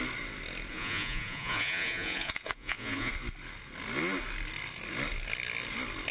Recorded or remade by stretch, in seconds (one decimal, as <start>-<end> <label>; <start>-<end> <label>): 0.0-0.7 recorded; 0.7-3.1 remade; 3.1-6.1 recorded